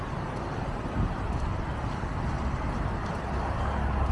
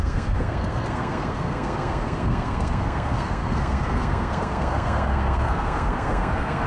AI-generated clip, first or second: second